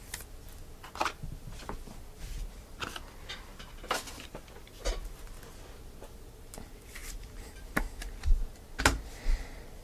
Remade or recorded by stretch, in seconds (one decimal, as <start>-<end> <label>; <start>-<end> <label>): 0.0-3.5 recorded; 3.5-4.4 remade; 4.4-9.8 recorded